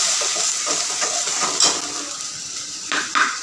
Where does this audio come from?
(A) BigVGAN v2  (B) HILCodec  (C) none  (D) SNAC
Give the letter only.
C